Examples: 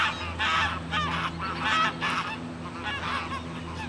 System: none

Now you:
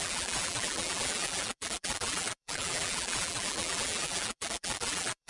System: vocoder, BigVGAN v2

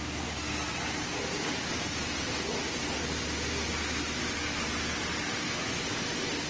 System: none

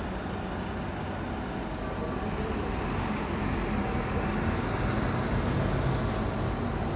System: none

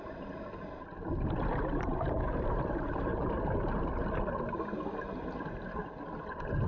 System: none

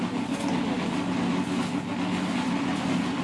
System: none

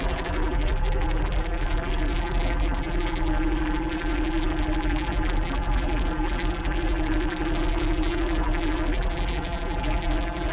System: vocoder, BigVGAN v2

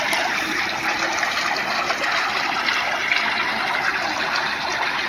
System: none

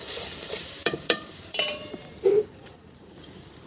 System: vocoder, BigVGAN v2